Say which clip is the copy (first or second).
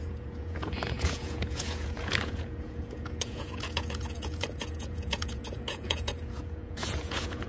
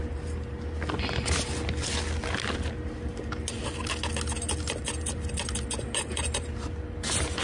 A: first